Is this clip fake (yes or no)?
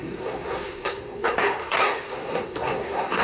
yes